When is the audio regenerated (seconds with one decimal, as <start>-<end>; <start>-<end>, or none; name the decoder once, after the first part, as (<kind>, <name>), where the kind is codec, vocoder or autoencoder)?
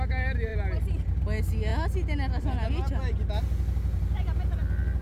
none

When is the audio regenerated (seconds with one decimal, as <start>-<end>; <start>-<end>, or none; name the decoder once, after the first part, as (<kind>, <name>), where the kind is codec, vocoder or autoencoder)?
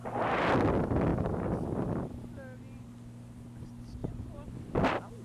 1.1-2.1 (vocoder, BigVGAN v2); 4.0-4.8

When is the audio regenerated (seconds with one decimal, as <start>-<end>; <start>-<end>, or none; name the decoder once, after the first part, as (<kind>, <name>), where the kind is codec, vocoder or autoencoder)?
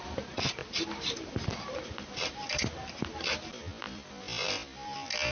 none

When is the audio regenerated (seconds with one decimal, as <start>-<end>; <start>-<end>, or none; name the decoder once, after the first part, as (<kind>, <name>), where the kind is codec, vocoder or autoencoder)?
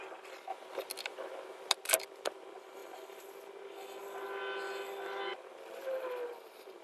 none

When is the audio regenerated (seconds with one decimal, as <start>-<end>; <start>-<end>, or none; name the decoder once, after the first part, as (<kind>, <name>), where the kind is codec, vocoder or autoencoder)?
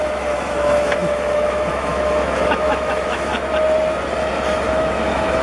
0.0-3.3 (autoencoder, DAC-VAE); 4.7-5.4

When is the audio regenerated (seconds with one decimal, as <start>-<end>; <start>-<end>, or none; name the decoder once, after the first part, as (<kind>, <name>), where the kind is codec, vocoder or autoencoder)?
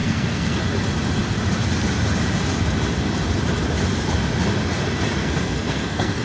0.0-0.6 (codec, SNAC); 5.2-6.2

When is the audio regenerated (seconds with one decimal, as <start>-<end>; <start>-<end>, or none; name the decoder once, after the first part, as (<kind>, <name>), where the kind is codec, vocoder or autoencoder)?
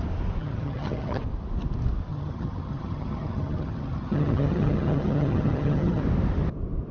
0.4-1.2 (vocoder, HiFi-GAN); 2.1-6.0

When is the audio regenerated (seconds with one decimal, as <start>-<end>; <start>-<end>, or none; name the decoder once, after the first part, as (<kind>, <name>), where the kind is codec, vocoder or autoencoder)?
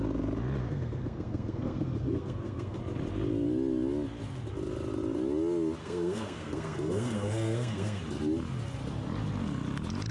0.6-2.8 (codec, SNAC); 5.8-8.0